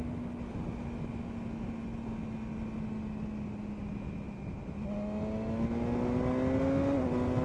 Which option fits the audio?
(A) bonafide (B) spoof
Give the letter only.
A